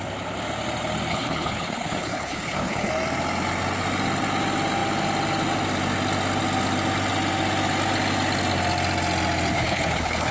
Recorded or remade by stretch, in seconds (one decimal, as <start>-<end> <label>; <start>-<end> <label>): 0.0-1.1 recorded; 1.1-2.9 remade; 2.9-9.5 recorded; 9.5-10.3 remade